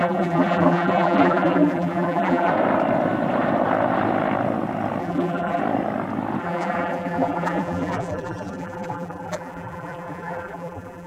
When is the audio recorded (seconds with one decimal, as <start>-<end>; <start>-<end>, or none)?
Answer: 2.5-5.0; 5.6-6.4